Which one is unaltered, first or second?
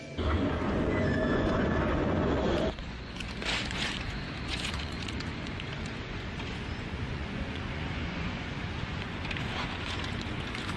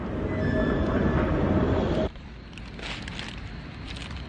second